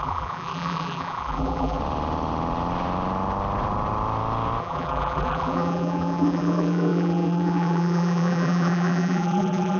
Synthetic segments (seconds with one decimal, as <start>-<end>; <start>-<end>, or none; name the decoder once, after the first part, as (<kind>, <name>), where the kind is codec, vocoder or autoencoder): 0.0-1.8 (vocoder, BigVGAN v2); 4.6-9.8